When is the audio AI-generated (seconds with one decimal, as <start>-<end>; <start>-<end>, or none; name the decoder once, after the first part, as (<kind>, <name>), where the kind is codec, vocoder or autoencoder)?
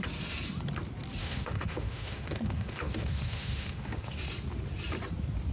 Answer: 1.2-4.2 (autoencoder, DAC-VAE)